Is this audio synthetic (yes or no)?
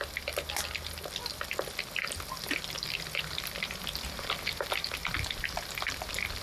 no